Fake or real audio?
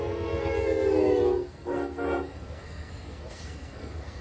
fake